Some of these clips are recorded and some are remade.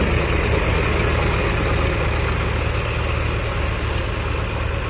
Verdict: recorded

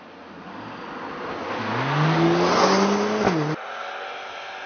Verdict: recorded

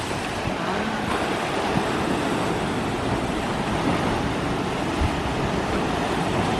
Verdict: recorded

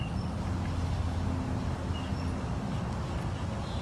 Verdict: recorded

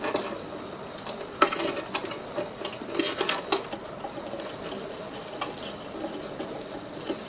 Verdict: recorded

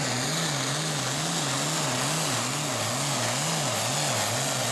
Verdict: recorded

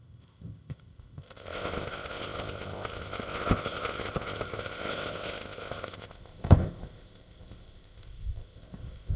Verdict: remade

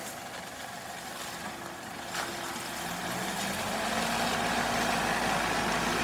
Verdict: recorded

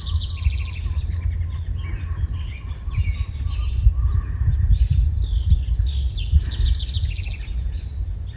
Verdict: recorded